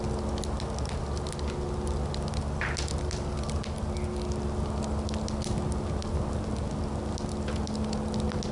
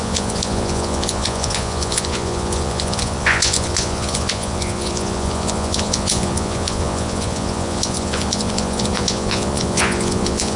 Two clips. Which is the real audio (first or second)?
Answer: first